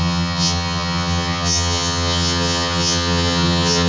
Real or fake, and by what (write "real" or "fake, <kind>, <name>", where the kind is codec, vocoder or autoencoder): fake, vocoder, HiFi-GAN